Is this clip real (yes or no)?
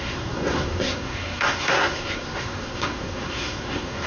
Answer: no